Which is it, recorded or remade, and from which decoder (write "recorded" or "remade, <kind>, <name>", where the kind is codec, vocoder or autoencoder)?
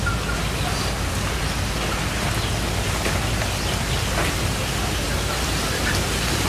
recorded